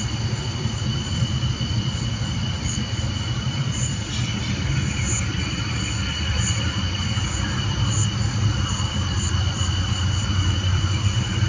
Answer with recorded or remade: remade